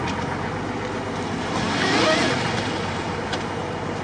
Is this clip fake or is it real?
real